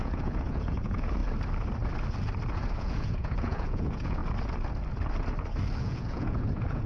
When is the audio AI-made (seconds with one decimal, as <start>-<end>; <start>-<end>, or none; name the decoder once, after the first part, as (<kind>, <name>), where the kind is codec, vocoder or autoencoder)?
0.0-1.2 (vocoder, Vocos); 2.7-4.2; 5.8-6.9